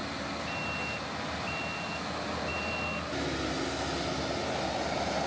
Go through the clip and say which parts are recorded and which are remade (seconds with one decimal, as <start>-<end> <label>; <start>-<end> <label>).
0.0-5.3 recorded